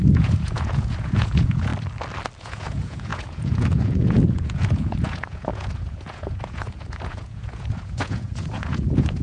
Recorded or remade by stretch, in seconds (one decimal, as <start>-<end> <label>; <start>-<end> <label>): 0.0-1.7 remade; 1.7-2.4 recorded; 2.4-9.2 remade